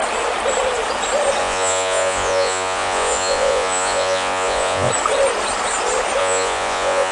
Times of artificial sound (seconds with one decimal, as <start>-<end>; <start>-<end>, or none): 1.4-4.9; 6.2-7.1